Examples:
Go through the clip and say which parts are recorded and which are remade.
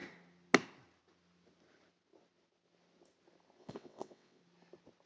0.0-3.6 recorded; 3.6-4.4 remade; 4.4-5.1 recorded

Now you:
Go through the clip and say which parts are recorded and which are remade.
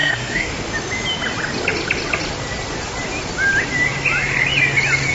0.0-0.5 remade; 0.5-5.1 recorded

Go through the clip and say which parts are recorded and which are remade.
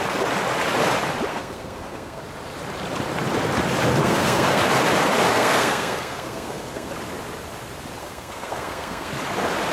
0.0-1.3 recorded; 1.3-2.2 remade; 2.2-4.0 recorded; 4.0-4.6 remade; 4.6-5.3 recorded; 5.3-6.9 remade; 6.9-8.0 recorded; 8.0-9.1 remade; 9.1-9.7 recorded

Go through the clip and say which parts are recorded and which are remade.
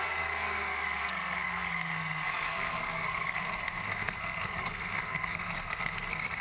0.0-6.4 remade